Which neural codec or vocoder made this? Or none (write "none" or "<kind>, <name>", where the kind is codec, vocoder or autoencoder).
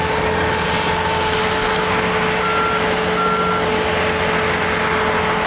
none